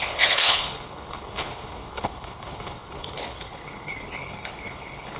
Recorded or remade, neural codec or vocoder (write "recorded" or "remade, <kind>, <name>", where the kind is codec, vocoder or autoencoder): remade, codec, HILCodec